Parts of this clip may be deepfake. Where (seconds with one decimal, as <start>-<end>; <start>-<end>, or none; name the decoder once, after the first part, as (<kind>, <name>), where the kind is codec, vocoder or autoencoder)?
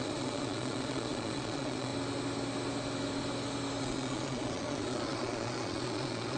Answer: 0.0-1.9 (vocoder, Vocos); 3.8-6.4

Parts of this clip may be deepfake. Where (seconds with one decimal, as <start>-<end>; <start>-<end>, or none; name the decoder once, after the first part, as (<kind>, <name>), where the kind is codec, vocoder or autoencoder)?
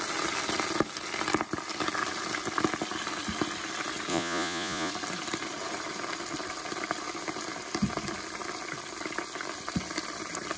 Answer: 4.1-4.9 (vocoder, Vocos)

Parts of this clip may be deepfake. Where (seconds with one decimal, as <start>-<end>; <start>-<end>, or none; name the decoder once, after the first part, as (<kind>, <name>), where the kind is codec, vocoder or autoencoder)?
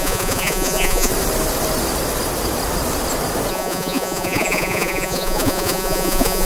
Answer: 0.0-1.1 (vocoder, Vocos); 3.5-6.5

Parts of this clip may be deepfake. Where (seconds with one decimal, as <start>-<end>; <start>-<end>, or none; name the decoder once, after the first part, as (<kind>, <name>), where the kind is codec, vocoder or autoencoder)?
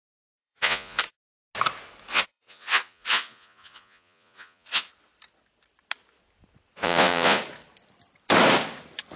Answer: 0.4-1.0 (vocoder, Vocos); 2.1-4.9; 6.8-7.4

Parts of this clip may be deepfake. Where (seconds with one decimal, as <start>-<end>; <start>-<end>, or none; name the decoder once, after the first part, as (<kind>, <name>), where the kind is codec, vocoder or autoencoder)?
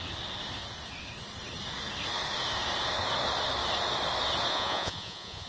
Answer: 4.5-5.5 (vocoder, Vocos)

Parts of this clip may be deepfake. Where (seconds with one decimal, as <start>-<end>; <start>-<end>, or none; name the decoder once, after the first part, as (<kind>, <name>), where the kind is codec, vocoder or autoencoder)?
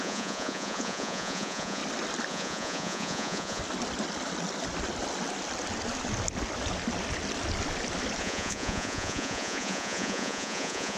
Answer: 0.0-1.8 (vocoder, Vocos); 2.3-3.6; 8.2-11.0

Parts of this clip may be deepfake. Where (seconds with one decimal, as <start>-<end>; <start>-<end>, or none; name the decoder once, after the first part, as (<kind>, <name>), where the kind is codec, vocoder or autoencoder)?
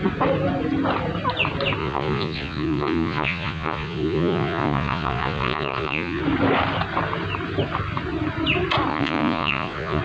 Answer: 1.8-6.2 (vocoder, Vocos); 8.9-10.0